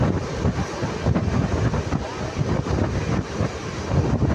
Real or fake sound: real